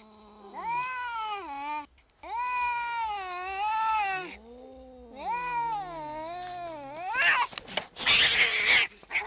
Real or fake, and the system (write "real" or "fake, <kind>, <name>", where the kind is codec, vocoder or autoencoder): real